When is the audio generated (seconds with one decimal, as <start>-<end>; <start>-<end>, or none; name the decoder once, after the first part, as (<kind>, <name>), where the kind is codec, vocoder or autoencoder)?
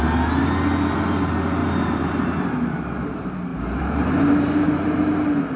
1.6-2.1 (vocoder, BigVGAN v2); 3.5-4.7